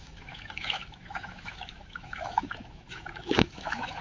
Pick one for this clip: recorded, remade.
remade